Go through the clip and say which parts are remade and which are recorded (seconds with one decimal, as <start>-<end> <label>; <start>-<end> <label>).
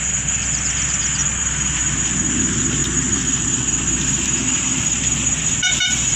0.0-6.2 recorded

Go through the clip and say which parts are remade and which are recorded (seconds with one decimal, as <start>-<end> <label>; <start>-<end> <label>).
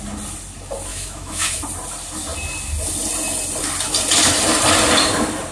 0.0-0.9 recorded; 0.9-1.6 remade; 1.6-5.5 recorded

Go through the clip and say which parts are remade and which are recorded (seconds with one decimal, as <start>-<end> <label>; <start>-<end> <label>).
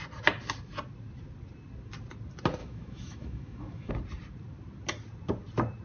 0.0-2.6 recorded; 2.6-3.9 remade; 3.9-5.8 recorded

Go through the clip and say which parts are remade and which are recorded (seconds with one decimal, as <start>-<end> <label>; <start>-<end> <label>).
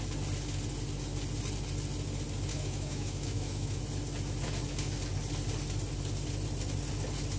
0.0-2.5 recorded; 2.5-3.8 remade; 3.8-7.4 recorded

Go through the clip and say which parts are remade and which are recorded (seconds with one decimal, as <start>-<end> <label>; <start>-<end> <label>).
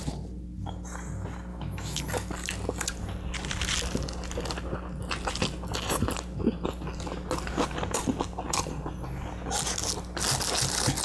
0.0-1.5 recorded; 1.5-2.0 remade; 2.0-11.0 recorded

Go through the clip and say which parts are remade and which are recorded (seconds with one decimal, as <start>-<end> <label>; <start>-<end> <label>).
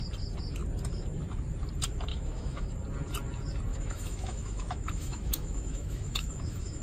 0.0-2.1 recorded; 2.1-2.7 remade; 2.7-3.7 recorded; 3.7-6.8 remade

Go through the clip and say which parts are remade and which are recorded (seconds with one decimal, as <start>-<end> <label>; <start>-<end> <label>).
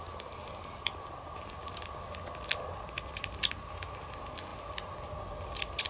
0.0-5.9 recorded